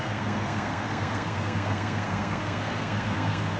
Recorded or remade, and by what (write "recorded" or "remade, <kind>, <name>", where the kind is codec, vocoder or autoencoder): remade, codec, SNAC